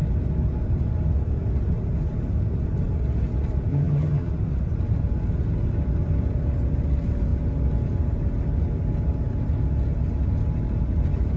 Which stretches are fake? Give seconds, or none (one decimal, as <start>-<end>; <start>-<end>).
3.7-4.3